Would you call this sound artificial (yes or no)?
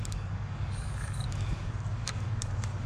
yes